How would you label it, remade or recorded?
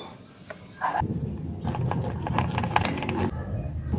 recorded